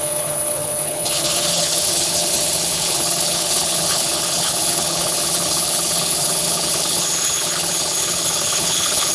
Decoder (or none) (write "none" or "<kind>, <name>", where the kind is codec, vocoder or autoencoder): codec, HILCodec